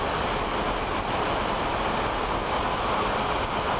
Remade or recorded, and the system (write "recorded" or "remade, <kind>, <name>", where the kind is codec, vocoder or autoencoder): recorded